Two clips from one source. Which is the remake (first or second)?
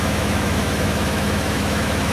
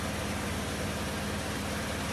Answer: first